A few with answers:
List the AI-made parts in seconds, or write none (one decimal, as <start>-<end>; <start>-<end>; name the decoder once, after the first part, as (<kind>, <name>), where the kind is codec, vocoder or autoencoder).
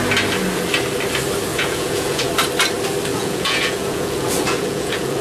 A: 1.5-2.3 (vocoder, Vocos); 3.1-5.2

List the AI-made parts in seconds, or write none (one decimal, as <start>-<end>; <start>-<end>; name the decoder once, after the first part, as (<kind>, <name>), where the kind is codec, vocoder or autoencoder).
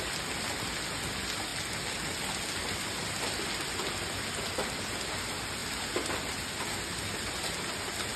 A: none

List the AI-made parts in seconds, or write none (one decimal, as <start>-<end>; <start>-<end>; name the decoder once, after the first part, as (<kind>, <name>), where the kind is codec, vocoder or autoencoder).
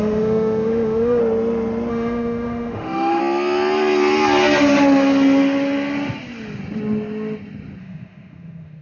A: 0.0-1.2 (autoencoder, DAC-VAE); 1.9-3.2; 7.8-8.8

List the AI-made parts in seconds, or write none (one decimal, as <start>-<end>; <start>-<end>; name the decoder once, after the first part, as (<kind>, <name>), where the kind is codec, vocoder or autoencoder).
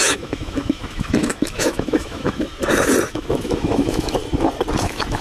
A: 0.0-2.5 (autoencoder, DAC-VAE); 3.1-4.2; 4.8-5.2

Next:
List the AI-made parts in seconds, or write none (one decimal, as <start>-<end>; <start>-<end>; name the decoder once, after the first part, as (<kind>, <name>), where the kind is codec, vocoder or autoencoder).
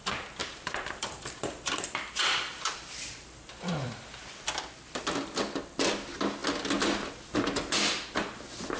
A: 0.4-4.4 (vocoder, BigVGAN v2)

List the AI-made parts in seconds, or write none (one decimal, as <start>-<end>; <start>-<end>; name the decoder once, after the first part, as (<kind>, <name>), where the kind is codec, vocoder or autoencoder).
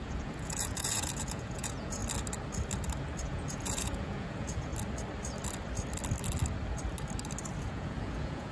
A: 0.0-2.0 (vocoder, Vocos); 3.2-4.7; 7.6-8.5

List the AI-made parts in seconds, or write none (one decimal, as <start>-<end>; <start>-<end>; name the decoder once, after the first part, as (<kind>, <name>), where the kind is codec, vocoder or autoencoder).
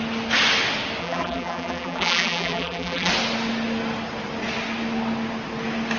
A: 1.0-3.1 (vocoder, BigVGAN v2)